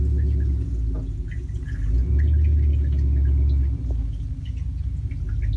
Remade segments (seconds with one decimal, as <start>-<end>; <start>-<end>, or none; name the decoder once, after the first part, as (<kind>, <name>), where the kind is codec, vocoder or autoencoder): none